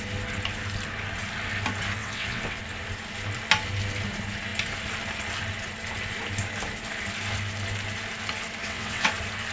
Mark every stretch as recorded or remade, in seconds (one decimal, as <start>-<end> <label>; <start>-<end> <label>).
0.0-2.0 recorded; 2.0-2.6 remade; 2.6-8.6 recorded; 8.6-9.1 remade; 9.1-9.5 recorded